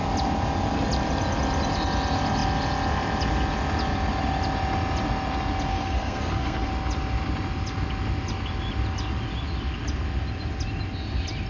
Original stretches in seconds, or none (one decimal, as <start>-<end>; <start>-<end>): 0.0-5.7; 6.7-11.5